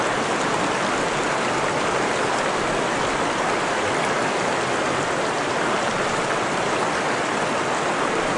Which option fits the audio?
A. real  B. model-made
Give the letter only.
A